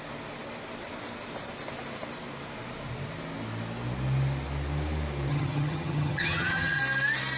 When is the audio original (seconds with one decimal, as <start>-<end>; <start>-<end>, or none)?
0.0-5.3; 6.8-7.4